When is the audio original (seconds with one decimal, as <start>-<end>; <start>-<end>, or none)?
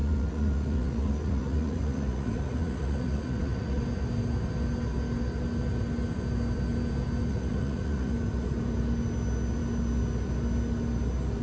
3.8-7.3; 8.1-11.4